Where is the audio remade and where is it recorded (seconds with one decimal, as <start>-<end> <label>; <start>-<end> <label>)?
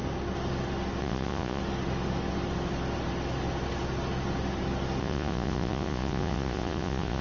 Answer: 0.0-1.0 recorded; 1.0-1.6 remade; 1.6-5.0 recorded; 5.0-7.2 remade